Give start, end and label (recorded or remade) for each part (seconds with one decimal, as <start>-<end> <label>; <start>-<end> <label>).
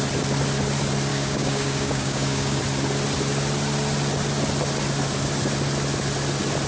0.0-1.1 recorded; 1.1-2.6 remade; 2.6-6.7 recorded